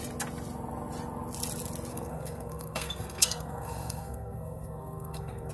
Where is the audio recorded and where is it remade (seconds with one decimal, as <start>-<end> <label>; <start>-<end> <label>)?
0.0-1.9 recorded; 1.9-5.5 remade